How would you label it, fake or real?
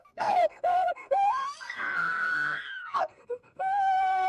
fake